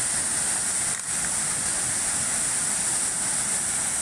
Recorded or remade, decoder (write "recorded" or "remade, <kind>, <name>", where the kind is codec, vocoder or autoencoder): recorded